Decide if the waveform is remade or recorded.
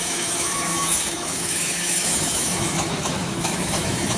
remade